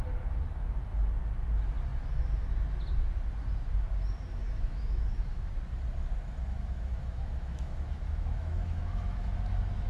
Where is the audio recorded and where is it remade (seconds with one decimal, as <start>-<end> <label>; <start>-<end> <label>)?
0.0-4.4 recorded; 4.4-5.5 remade; 5.5-6.4 recorded; 6.4-9.9 remade